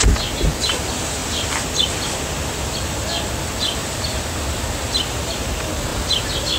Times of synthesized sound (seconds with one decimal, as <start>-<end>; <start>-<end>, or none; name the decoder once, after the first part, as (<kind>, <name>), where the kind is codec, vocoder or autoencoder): 3.8-4.4 (vocoder, BigVGAN v2)